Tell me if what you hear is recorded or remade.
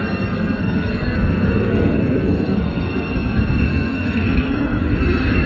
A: remade